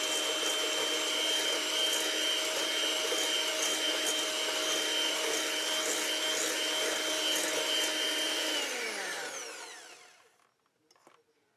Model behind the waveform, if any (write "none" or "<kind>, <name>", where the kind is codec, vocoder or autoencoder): none